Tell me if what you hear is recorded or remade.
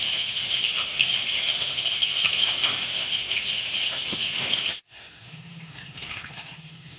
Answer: remade